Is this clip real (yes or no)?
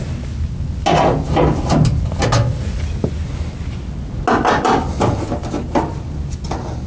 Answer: yes